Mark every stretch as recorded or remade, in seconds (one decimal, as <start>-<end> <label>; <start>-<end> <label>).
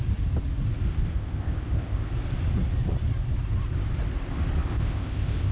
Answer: 0.0-0.9 recorded; 0.9-2.1 remade; 2.1-4.7 recorded; 4.7-5.5 remade